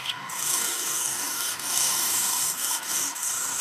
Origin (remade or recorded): remade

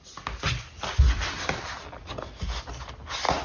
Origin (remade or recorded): recorded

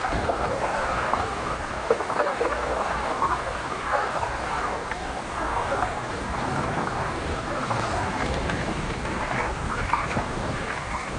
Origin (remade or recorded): remade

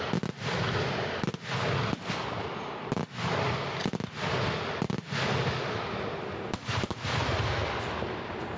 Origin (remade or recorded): recorded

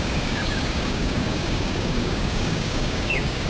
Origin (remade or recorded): remade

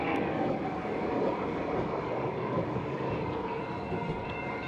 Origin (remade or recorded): remade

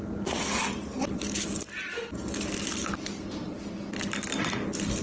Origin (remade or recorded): recorded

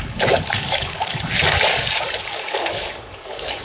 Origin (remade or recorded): remade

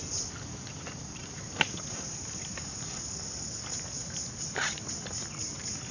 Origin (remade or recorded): recorded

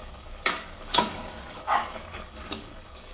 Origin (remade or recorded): remade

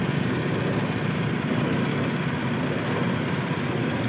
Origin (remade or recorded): recorded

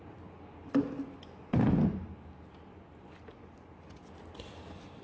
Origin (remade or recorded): recorded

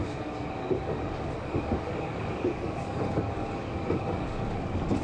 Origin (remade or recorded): remade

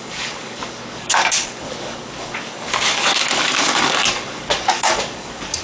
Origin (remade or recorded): remade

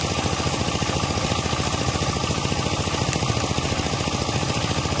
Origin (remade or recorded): recorded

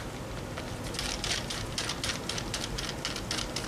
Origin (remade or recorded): recorded